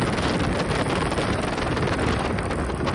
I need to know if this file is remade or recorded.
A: recorded